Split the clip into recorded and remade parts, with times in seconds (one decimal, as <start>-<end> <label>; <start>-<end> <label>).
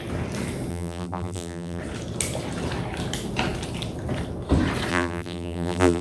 0.0-0.7 recorded; 0.7-1.8 remade; 1.8-4.9 recorded; 4.9-6.0 remade